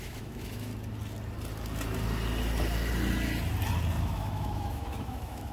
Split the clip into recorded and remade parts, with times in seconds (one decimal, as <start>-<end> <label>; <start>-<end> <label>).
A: 0.0-0.7 remade; 0.7-4.0 recorded; 4.0-5.5 remade